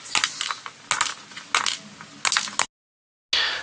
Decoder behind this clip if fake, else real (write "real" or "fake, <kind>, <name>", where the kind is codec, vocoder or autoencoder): real